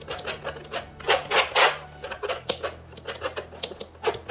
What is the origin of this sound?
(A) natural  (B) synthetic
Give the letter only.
A